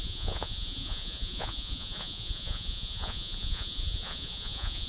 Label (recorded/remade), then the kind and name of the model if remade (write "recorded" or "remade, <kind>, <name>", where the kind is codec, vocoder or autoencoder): remade, vocoder, Vocos